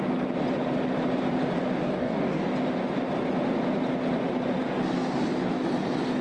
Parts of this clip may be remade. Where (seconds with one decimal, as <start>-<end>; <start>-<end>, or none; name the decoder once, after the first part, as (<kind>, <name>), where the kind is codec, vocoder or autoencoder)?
1.8-2.5 (codec, DAC)